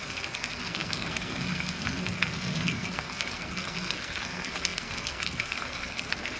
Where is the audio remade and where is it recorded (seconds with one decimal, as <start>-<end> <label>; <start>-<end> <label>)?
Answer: 0.0-6.4 remade

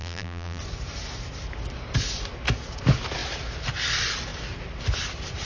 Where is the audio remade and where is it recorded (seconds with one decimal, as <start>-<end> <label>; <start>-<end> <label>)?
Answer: 0.0-0.6 remade; 0.6-5.4 recorded

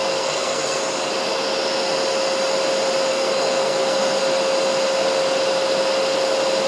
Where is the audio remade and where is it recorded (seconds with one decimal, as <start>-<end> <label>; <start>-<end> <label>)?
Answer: 0.0-0.8 remade; 0.8-3.1 recorded; 3.1-4.2 remade; 4.2-6.7 recorded

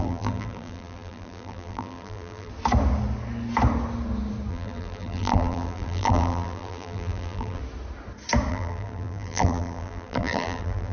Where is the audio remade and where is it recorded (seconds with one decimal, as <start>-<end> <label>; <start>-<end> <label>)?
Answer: 0.0-2.5 remade; 2.5-4.5 recorded; 4.5-7.6 remade; 7.6-8.5 recorded; 8.5-10.9 remade